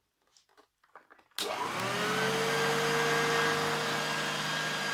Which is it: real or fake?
real